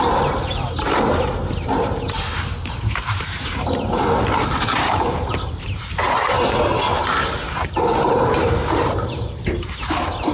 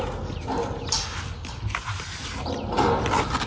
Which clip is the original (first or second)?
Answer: second